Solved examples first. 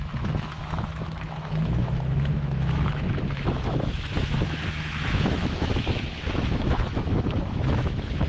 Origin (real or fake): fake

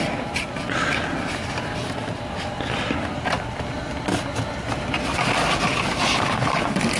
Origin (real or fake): real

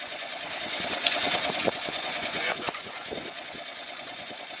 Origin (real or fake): fake